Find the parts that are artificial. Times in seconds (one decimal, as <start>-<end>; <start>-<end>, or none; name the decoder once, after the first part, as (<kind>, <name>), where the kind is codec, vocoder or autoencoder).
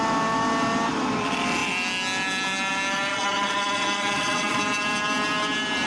3.1-4.6 (vocoder, Vocos)